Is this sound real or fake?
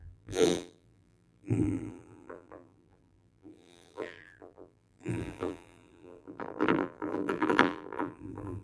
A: fake